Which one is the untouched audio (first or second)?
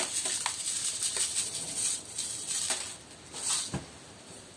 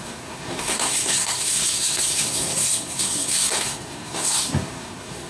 first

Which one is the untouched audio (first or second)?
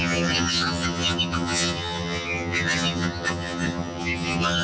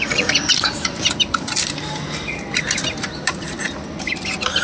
second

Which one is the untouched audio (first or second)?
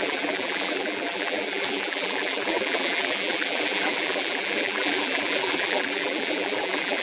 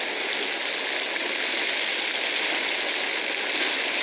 second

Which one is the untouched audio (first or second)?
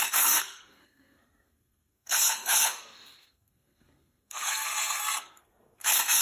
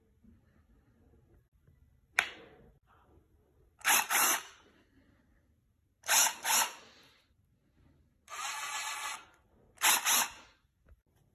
second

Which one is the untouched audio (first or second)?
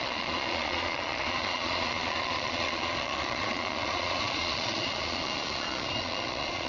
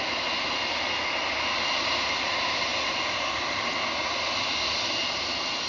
second